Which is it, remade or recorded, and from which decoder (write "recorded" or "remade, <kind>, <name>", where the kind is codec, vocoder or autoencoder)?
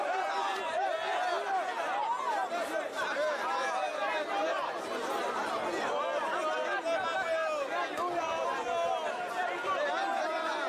recorded